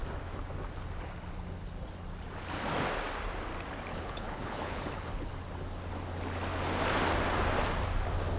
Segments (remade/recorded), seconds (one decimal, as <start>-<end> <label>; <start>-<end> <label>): 0.0-3.9 recorded; 3.9-5.3 remade; 5.3-8.4 recorded